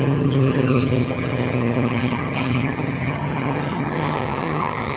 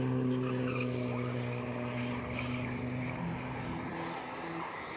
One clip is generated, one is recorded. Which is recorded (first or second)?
second